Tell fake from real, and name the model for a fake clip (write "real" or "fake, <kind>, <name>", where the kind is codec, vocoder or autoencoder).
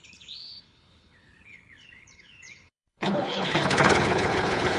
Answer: fake, codec, HILCodec